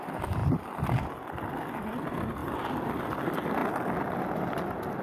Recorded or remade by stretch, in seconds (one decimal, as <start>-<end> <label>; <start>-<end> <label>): 0.0-0.4 recorded; 0.4-1.1 remade; 1.1-5.0 recorded